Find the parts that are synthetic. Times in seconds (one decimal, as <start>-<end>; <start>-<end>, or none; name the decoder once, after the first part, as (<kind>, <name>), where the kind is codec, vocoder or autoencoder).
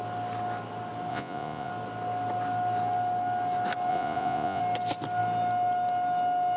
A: 1.1-1.7 (vocoder, Vocos); 3.9-4.6